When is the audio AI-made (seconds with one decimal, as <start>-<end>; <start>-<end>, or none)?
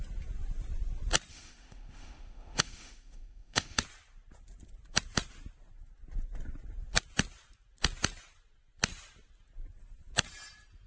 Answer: 1.3-3.8